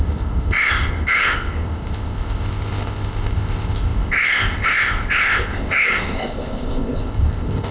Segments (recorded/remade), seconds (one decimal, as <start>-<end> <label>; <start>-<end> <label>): 0.0-7.7 remade